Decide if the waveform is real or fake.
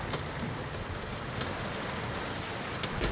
real